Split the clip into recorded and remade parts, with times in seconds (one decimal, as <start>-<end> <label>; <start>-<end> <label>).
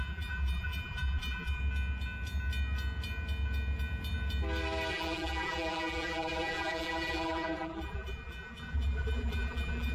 0.0-1.6 remade; 1.6-4.9 recorded; 4.9-9.9 remade